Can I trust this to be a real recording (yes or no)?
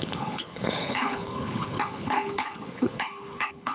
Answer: no